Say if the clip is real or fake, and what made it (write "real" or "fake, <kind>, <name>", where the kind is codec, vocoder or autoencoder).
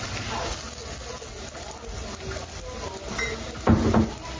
real